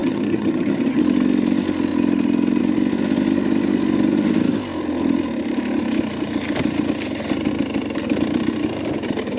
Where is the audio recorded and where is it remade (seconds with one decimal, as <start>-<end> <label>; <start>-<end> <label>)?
0.0-1.0 remade; 1.0-9.4 recorded